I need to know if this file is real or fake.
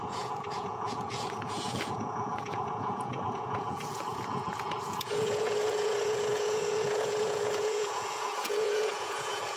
fake